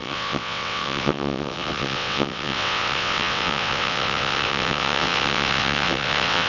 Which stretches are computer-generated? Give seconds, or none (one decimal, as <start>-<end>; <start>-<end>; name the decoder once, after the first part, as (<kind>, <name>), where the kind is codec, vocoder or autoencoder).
0.0-6.5 (vocoder, WaveNeXt)